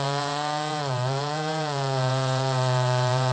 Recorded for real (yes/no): no